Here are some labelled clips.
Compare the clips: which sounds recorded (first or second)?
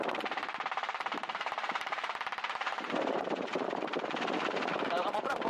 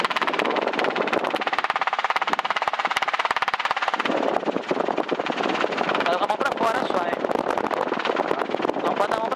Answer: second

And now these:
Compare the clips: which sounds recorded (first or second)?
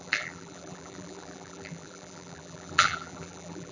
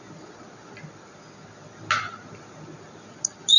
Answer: second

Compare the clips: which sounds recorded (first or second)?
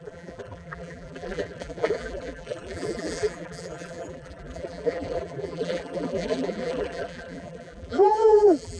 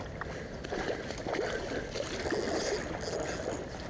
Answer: second